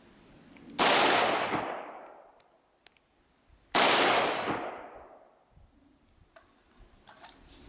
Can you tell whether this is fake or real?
real